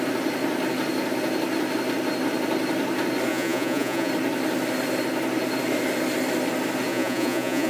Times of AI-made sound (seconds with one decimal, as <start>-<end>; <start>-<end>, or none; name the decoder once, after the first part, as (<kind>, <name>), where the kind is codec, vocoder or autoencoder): 3.3-4.1 (vocoder, Vocos); 6.9-7.7